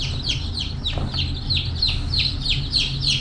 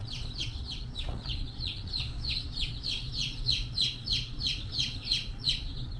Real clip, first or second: first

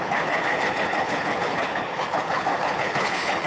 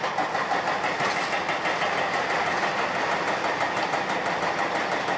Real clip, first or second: second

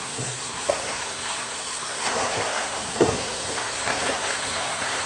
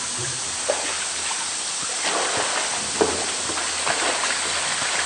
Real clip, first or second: second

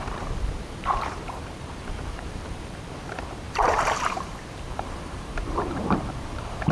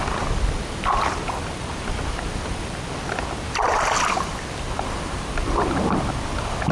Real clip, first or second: second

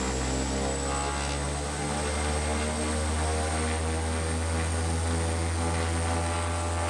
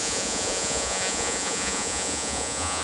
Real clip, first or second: first